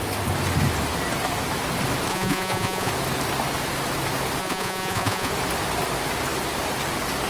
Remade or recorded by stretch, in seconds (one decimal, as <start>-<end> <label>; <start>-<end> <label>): 0.0-2.1 recorded; 2.1-2.9 remade; 2.9-4.4 recorded; 4.4-5.3 remade; 5.3-7.3 recorded